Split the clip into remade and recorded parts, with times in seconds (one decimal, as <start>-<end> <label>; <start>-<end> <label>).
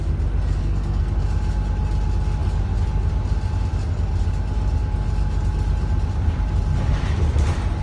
0.0-0.6 recorded; 0.6-1.1 remade; 1.1-7.8 recorded